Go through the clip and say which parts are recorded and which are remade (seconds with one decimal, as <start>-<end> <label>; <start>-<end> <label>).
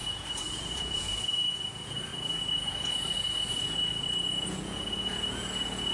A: 0.0-5.9 remade